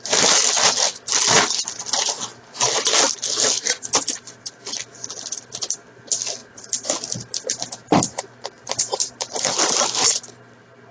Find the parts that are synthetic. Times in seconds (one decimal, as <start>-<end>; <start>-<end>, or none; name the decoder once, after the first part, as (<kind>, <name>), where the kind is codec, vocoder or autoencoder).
none